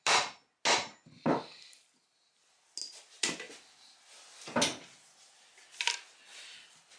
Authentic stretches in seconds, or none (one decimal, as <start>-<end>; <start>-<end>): 0.0-7.0